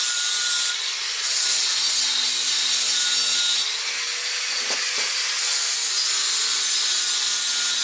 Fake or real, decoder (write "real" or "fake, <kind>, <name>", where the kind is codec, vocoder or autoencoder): real